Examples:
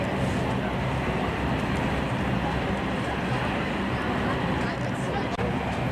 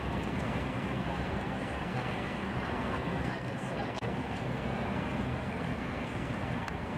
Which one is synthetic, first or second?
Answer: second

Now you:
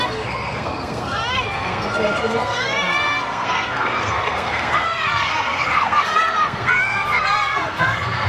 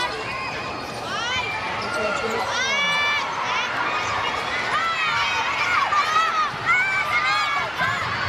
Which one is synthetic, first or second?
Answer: first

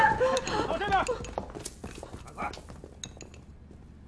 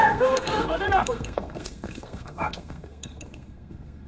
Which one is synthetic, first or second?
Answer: second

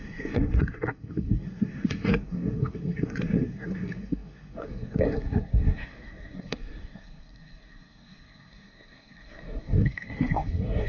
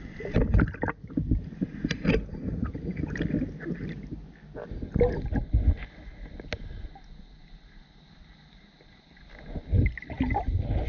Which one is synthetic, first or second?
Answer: first